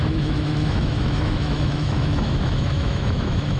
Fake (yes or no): yes